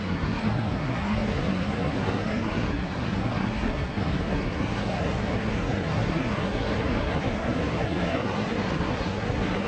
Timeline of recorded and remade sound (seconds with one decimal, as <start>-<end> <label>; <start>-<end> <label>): 0.0-9.7 remade